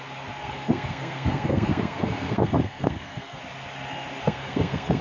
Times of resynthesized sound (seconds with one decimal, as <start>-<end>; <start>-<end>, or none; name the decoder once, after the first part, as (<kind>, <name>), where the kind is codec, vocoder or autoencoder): 0.4-3.4 (codec, SNAC); 4.2-5.0